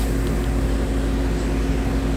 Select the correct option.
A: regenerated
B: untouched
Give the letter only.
B